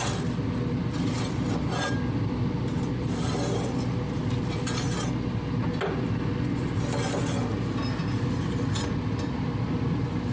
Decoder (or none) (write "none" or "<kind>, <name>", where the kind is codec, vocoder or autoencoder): none